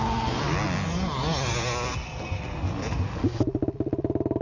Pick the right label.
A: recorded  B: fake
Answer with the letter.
A